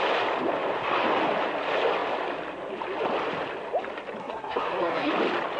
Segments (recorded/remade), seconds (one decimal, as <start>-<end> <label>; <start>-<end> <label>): 0.0-4.2 recorded; 4.2-5.1 remade; 5.1-5.6 recorded